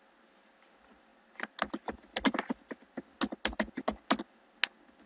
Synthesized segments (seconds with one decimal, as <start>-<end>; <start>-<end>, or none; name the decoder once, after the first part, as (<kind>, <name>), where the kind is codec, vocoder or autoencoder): none